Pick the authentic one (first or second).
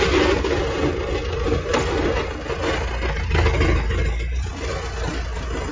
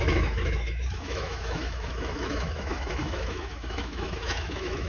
first